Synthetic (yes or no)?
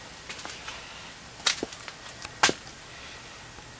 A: no